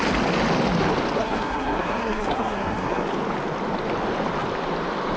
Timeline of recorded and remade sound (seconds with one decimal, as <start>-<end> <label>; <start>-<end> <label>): 0.0-1.2 recorded; 1.2-3.0 remade; 3.0-5.2 recorded